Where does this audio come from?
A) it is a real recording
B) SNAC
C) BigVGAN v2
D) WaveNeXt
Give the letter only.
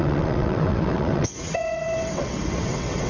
D